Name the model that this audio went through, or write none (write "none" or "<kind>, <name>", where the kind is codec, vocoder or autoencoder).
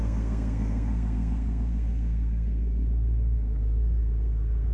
codec, SNAC